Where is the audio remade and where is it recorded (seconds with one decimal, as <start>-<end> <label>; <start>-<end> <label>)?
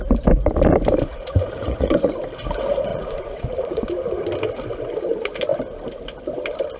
0.0-1.1 recorded; 1.1-2.1 remade; 2.1-2.9 recorded; 2.9-3.8 remade; 3.8-6.8 recorded